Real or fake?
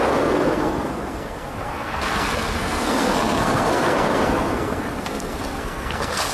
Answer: fake